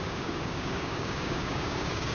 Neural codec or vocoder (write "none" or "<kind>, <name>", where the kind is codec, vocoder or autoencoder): codec, DAC